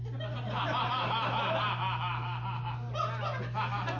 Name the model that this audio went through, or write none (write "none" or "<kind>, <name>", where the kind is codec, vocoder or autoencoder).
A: none